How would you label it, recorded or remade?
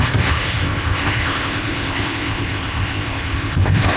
remade